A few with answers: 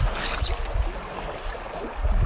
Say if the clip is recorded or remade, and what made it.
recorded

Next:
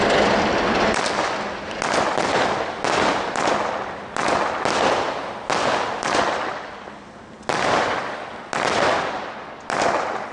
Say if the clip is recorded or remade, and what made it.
recorded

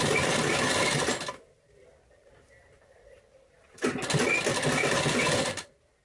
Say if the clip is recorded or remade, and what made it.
recorded